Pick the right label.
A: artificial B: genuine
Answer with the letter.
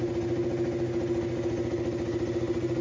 B